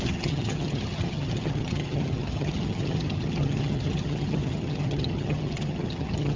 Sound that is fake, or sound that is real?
fake